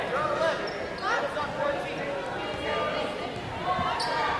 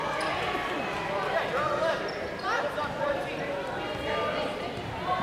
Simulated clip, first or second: second